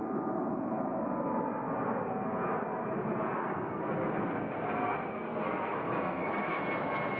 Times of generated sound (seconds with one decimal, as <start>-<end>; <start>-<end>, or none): 3.4-6.6